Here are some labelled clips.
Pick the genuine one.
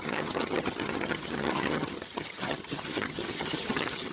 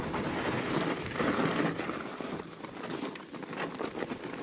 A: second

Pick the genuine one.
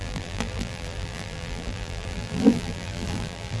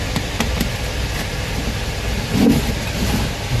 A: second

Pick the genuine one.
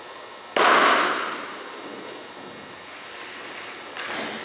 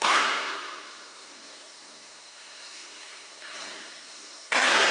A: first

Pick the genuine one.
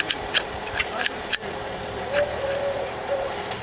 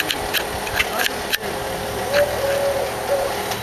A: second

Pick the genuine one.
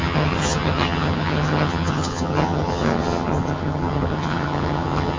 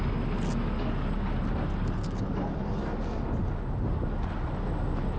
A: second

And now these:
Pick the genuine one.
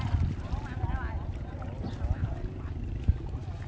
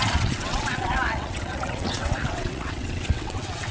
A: first